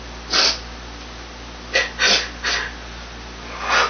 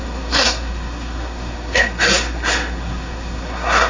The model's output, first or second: second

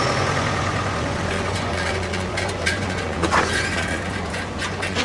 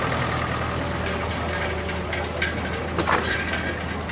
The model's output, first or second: first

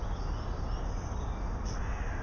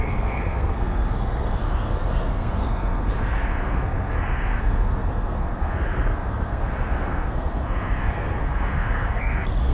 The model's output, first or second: second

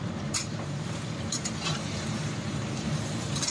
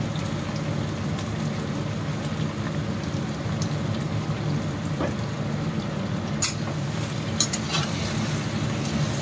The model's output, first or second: first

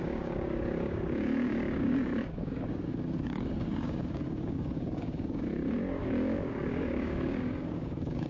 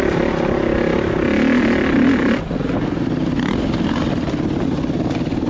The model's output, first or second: first